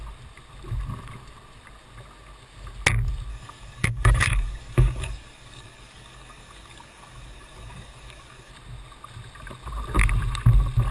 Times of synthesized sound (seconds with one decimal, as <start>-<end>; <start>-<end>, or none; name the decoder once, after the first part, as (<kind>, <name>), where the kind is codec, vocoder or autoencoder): 3.3-8.5 (codec, DAC)